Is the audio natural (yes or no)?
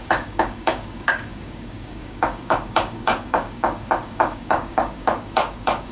no